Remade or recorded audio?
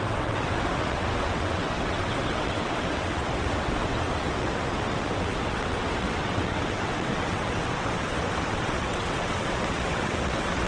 remade